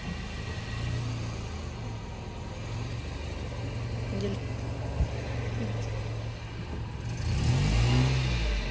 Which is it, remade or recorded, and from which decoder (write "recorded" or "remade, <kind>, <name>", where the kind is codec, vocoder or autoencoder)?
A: recorded